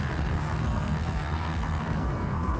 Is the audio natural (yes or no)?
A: no